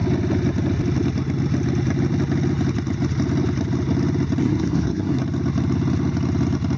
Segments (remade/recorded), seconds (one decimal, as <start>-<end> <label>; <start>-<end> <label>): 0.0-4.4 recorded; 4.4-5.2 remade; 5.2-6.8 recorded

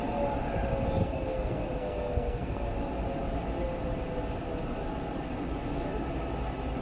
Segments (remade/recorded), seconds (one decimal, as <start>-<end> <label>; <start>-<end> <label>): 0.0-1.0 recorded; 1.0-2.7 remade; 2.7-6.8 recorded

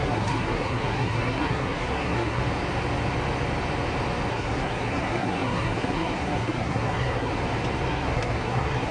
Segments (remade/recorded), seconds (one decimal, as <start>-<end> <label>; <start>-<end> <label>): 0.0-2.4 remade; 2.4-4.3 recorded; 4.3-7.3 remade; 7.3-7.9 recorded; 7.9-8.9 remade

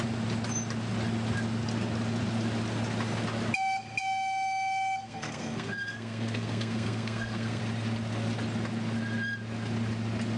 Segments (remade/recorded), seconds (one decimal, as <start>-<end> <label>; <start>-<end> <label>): 0.0-5.0 recorded; 5.0-7.6 remade; 7.6-10.4 recorded

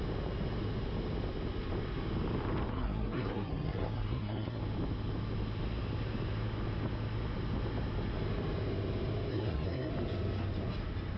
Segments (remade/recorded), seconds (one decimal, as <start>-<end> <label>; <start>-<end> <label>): 0.0-2.7 recorded; 2.7-4.6 remade; 4.6-9.3 recorded; 9.3-9.9 remade; 9.9-11.2 recorded

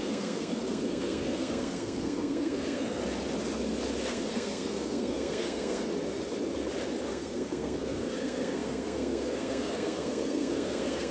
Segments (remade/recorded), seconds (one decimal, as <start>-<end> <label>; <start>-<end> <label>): 0.0-3.0 remade; 3.0-4.1 recorded; 4.1-5.9 remade; 5.9-7.1 recorded; 7.1-11.1 remade

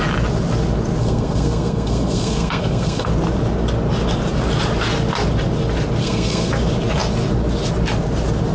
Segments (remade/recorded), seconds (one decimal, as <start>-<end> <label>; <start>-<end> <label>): 0.0-1.0 recorded; 1.0-3.1 remade; 3.1-6.0 recorded; 6.0-6.5 remade; 6.5-8.5 recorded